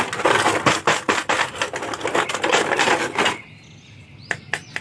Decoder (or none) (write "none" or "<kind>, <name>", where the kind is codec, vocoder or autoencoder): none